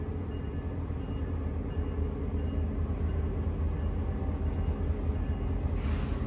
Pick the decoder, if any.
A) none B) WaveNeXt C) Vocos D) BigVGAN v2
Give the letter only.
A